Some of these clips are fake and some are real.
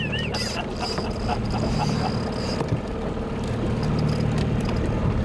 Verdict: real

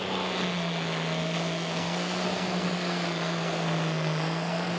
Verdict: fake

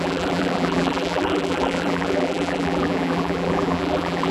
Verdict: fake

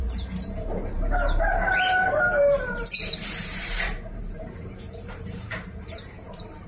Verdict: fake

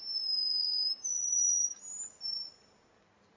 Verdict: real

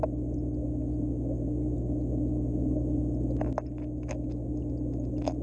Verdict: real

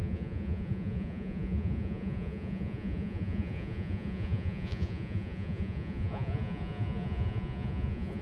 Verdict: fake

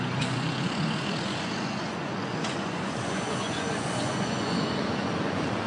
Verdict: fake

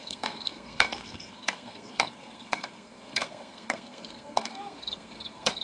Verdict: fake